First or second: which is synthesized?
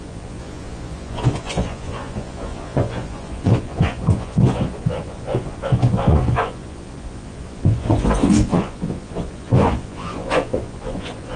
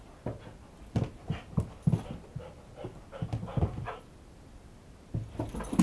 first